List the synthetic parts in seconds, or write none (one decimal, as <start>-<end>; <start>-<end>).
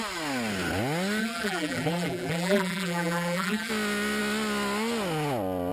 1.2-3.7